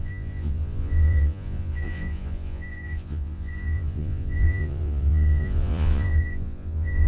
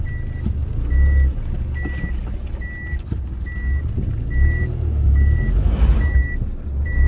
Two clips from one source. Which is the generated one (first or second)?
first